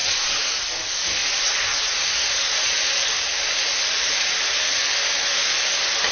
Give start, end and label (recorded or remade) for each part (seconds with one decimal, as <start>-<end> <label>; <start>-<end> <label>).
0.0-1.2 recorded; 1.2-4.8 remade; 4.8-6.1 recorded